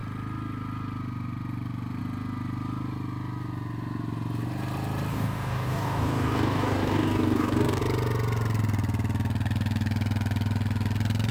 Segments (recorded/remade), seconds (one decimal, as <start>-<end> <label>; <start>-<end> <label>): 0.0-5.1 recorded; 5.1-7.8 remade; 7.8-11.3 recorded